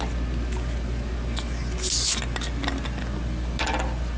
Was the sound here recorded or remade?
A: recorded